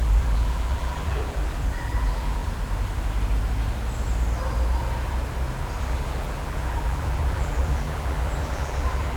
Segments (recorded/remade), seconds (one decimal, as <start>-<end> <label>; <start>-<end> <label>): 0.0-2.4 remade; 2.4-5.8 recorded; 5.8-9.2 remade